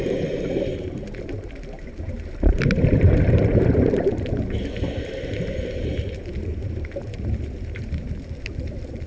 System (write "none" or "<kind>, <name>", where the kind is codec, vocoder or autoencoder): vocoder, BigVGAN v2